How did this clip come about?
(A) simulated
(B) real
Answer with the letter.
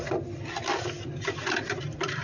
B